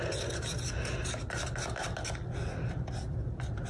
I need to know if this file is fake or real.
real